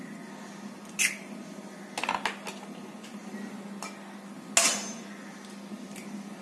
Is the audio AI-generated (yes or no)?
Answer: no